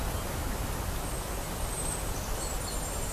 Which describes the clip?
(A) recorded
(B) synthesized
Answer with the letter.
A